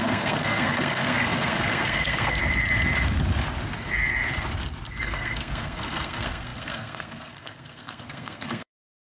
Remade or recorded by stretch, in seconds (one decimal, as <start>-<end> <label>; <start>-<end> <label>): 0.0-2.4 remade; 2.4-5.0 recorded; 5.0-9.2 remade